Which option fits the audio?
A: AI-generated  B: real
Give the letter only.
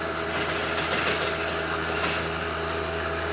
B